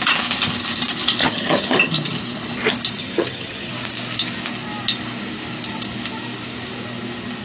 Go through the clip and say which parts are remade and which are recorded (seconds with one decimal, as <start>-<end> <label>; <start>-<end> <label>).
0.0-1.2 recorded; 1.2-1.9 remade; 1.9-3.0 recorded; 3.0-3.7 remade; 3.7-7.4 recorded